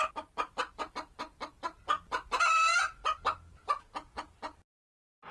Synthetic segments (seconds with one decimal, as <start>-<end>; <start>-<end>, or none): 2.7-4.1